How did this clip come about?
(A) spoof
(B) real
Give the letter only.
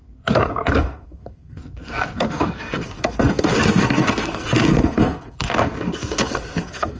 A